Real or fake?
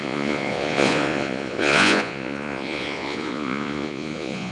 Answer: fake